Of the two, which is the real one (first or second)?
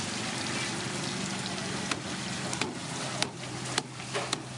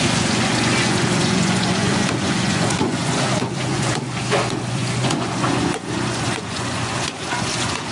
first